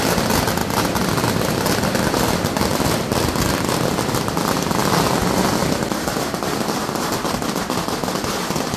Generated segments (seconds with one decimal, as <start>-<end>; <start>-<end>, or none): 0.6-2.0; 2.7-4.2; 6.8-8.8